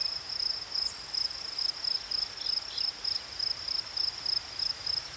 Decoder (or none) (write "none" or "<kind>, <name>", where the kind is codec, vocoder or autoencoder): none